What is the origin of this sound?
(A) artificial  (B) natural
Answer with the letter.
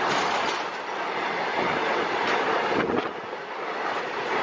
B